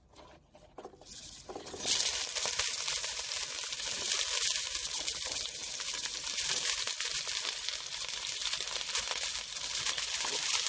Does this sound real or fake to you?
real